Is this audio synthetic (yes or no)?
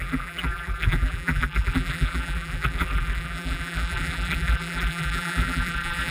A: yes